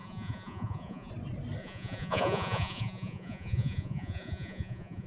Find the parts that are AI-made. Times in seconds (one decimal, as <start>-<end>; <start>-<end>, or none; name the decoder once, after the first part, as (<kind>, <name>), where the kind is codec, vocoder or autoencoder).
0.0-1.1 (vocoder, Vocos); 1.6-5.1